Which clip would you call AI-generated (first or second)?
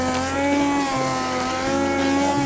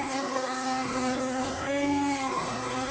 second